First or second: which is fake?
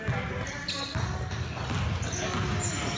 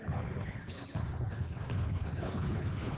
second